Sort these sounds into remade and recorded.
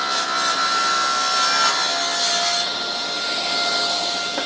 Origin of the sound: recorded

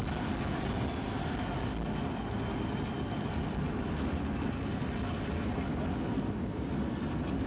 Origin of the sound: recorded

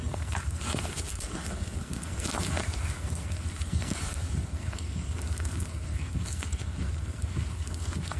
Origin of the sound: remade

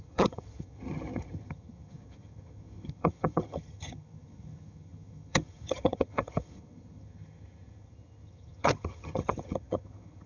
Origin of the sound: remade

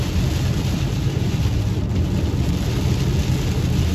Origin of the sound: recorded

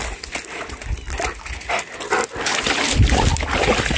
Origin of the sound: recorded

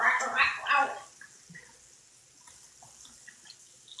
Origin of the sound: recorded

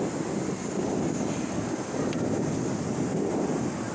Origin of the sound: recorded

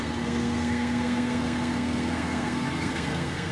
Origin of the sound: remade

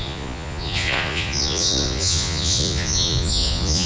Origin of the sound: remade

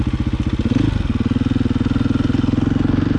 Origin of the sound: recorded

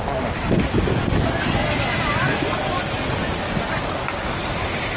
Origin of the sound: recorded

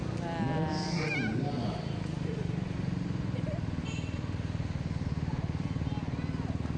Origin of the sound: recorded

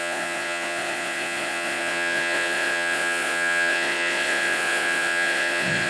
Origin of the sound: remade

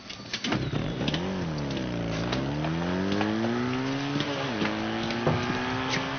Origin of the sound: recorded